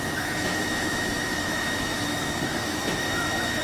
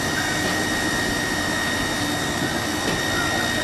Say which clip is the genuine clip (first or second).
second